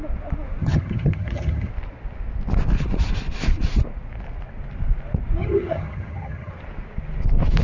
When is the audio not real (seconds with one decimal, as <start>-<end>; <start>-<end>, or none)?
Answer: 0.6-1.7; 5.4-6.5